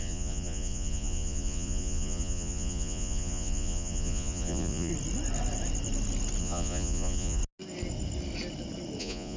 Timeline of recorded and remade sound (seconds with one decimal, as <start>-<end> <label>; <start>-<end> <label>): 0.0-4.9 remade; 4.9-6.4 recorded; 6.4-7.4 remade; 7.4-9.0 recorded; 9.0-9.4 remade